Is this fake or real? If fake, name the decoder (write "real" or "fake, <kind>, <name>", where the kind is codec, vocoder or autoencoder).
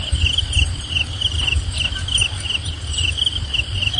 real